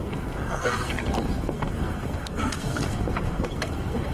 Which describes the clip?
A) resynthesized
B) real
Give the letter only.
A